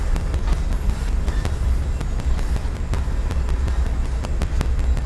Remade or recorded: recorded